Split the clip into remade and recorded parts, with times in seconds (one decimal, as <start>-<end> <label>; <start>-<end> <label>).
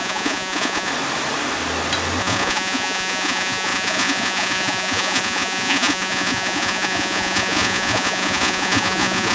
0.0-0.9 remade; 0.9-2.2 recorded; 2.2-9.3 remade